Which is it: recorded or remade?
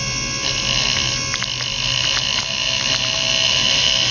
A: recorded